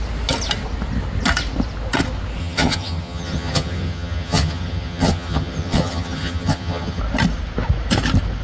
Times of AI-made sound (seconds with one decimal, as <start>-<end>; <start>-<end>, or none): 2.4-7.0